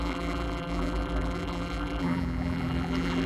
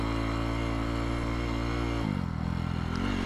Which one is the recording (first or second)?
second